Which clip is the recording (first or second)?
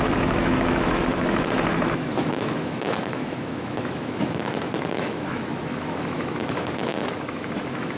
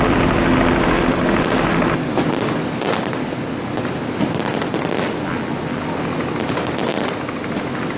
second